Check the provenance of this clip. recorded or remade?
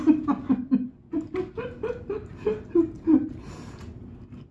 recorded